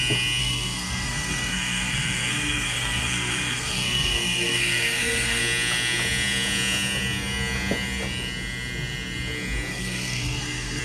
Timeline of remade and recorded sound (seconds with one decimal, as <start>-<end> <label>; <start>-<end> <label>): 0.0-0.4 recorded; 0.4-5.4 remade; 5.4-9.7 recorded; 9.7-10.8 remade